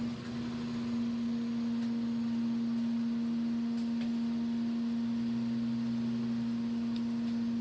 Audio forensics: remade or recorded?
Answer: recorded